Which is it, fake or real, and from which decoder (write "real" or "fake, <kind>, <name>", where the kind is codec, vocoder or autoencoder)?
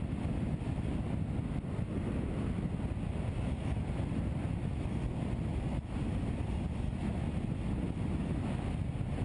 real